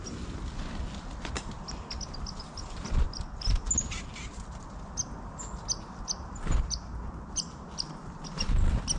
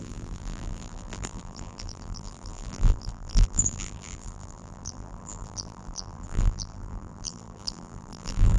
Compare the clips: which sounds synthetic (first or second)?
second